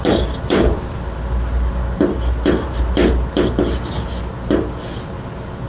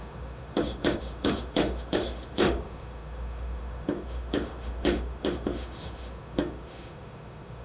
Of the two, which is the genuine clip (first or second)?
first